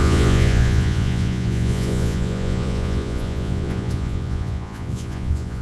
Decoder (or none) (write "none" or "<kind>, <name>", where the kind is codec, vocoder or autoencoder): vocoder, Vocos